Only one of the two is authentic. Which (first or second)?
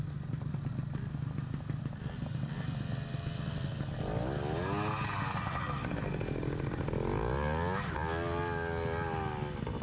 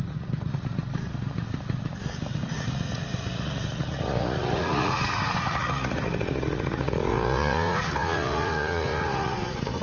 first